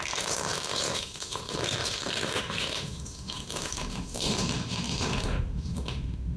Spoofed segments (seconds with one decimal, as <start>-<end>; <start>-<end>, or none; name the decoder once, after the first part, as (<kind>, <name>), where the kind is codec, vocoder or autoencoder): 0.0-6.4 (autoencoder, DAC-VAE)

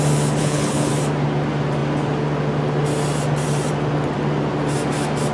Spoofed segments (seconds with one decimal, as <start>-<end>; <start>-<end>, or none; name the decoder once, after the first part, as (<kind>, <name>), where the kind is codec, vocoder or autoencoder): 0.4-0.9 (codec, HILCodec)

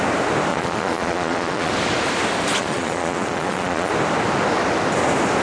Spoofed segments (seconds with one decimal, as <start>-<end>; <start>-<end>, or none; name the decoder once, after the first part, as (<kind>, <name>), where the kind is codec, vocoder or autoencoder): 0.5-1.7 (vocoder, Vocos); 2.6-3.9

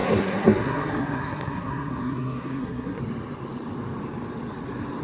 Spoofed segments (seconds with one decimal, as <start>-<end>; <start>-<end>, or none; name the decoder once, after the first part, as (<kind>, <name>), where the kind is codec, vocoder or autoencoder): 0.0-3.0 (codec, SNAC)